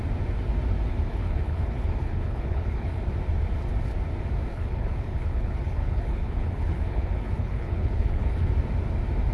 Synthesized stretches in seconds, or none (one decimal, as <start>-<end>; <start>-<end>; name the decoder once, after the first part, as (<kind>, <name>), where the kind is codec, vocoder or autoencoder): 1.1-3.0 (codec, HILCodec); 4.5-8.5